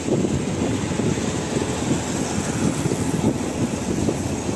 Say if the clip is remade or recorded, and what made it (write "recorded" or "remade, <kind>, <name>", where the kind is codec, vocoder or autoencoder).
recorded